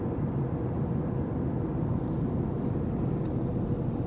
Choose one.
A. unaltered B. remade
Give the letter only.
A